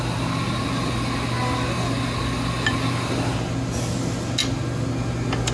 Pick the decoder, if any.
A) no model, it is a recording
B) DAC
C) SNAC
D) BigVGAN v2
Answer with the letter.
A